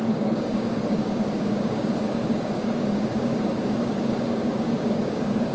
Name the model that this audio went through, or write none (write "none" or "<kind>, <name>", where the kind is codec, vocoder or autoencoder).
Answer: codec, DAC